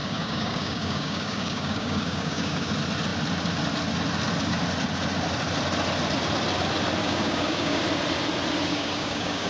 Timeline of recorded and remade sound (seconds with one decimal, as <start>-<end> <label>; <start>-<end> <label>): 0.0-2.7 remade; 2.7-7.0 recorded; 7.0-7.8 remade; 7.8-8.7 recorded; 8.7-9.5 remade